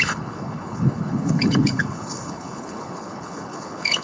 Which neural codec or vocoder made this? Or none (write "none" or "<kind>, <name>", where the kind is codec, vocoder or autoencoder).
codec, HILCodec